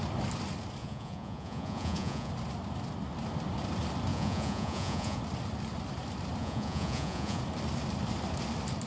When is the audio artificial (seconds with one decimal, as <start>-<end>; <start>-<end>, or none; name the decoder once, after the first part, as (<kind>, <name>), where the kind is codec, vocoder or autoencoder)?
0.8-2.3 (vocoder, Vocos); 4.1-5.2; 6.4-7.4